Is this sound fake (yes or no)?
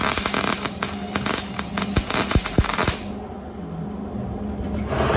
no